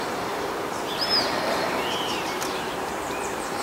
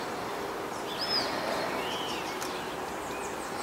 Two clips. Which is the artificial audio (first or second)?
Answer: first